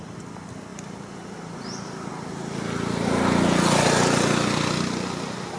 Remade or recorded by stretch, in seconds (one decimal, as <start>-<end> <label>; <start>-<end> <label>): 0.0-5.6 recorded